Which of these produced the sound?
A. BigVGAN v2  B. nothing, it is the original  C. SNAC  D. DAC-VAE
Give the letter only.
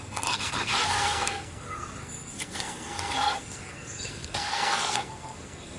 C